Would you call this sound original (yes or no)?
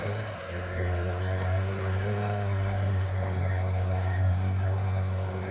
no